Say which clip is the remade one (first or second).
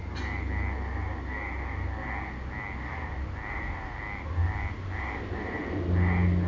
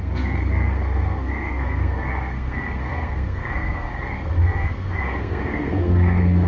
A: second